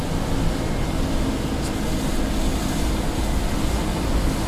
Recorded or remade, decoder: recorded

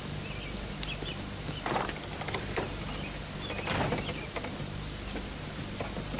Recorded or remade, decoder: recorded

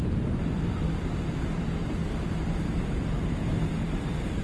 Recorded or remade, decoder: recorded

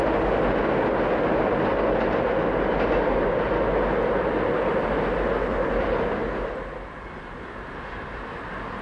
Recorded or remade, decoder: recorded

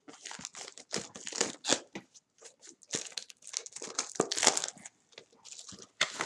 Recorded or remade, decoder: recorded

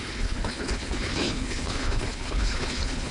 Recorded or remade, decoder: remade, codec, HILCodec